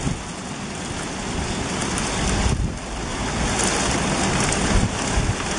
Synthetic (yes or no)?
no